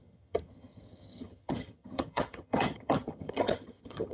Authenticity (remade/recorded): remade